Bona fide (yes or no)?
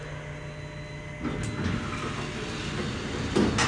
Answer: yes